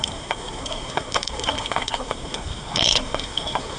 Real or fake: fake